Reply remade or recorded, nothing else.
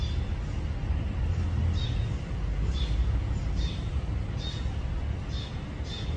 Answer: recorded